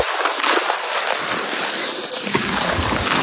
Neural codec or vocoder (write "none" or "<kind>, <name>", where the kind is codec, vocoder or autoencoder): none